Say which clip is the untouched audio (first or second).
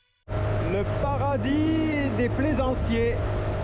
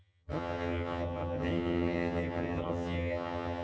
first